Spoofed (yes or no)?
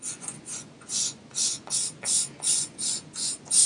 yes